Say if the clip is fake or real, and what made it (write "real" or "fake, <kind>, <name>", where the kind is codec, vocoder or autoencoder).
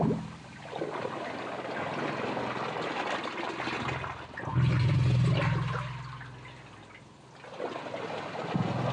real